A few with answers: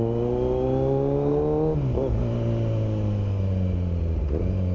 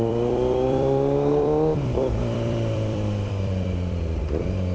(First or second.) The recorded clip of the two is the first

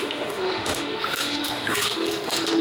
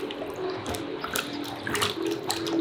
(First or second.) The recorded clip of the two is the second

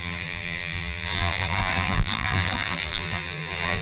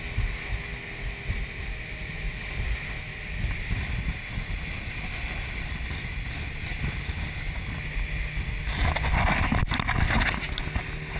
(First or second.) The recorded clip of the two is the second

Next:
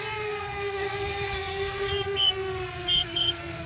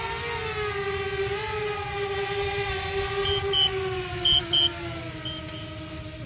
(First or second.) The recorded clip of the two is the second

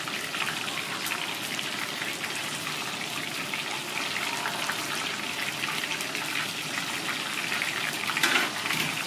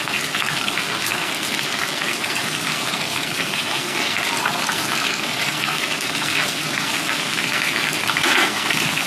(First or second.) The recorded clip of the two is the first